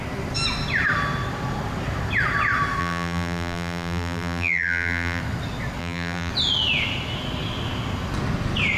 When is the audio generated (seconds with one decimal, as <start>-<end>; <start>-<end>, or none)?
2.8-5.2; 5.8-6.3